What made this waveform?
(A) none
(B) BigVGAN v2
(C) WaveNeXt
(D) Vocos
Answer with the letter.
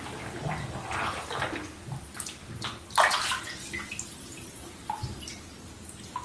A